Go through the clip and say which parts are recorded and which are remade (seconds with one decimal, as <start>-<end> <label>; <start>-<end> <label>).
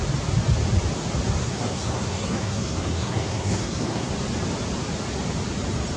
0.0-1.4 recorded; 1.4-4.1 remade; 4.1-6.0 recorded